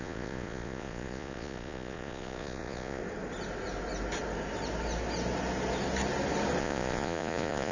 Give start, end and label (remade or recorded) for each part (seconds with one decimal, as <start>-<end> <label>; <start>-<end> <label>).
0.0-3.0 remade; 3.0-6.6 recorded; 6.6-7.7 remade